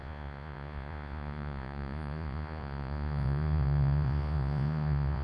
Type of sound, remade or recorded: remade